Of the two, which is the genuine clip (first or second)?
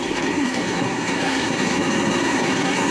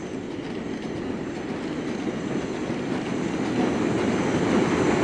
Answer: second